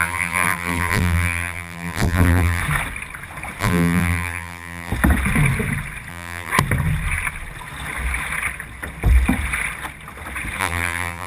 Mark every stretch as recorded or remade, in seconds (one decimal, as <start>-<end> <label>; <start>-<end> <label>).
0.0-2.6 remade; 2.6-3.6 recorded; 3.6-4.9 remade; 4.9-6.1 recorded; 6.1-6.5 remade; 6.5-10.6 recorded; 10.6-11.3 remade